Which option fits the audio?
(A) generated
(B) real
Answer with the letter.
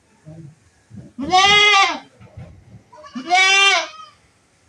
B